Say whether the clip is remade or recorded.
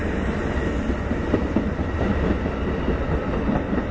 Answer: recorded